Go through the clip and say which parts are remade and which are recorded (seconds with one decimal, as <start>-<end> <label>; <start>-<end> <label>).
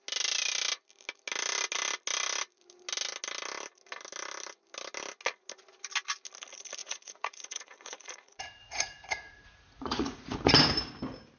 0.0-6.8 recorded; 6.8-10.5 remade; 10.5-11.4 recorded